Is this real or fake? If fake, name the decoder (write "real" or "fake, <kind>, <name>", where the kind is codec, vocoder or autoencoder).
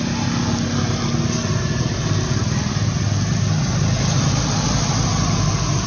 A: real